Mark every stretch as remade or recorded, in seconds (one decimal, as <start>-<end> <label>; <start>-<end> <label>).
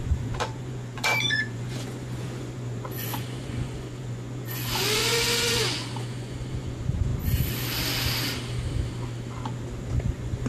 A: 0.0-7.1 remade; 7.1-9.9 recorded; 9.9-10.5 remade